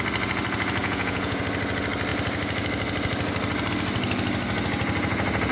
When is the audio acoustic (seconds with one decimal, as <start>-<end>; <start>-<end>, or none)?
0.0-0.8; 1.4-5.5